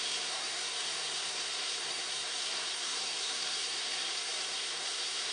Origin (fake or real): fake